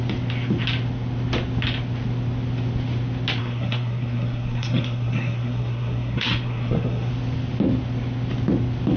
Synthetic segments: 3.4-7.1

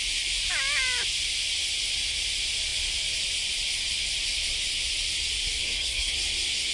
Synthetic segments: 5.6-6.1